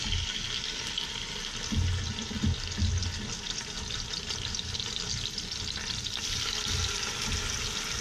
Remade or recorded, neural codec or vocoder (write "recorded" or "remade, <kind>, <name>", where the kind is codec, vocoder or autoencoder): recorded